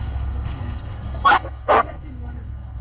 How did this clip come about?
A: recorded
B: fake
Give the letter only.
B